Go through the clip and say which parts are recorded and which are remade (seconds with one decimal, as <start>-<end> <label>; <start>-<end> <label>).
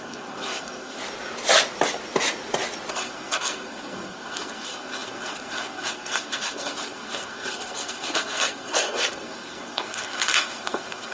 0.0-1.0 remade; 1.0-2.9 recorded; 2.9-11.1 remade